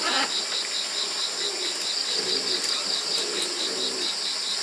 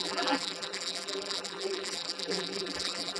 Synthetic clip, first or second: second